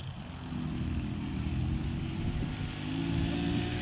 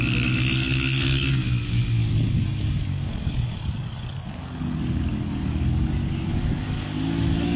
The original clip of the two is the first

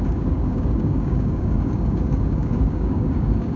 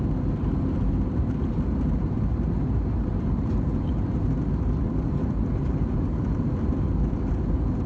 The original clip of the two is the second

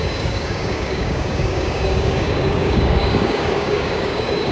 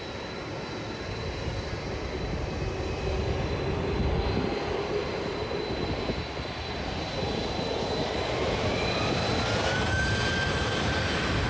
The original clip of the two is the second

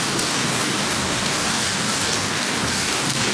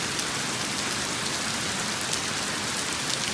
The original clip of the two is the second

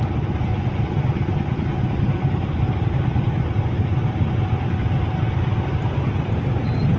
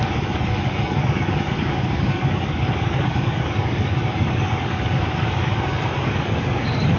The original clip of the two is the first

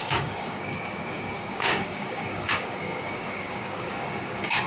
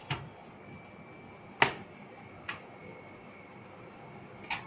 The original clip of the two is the second